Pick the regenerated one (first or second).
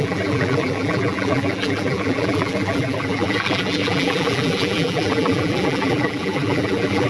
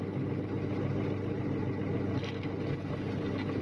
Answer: first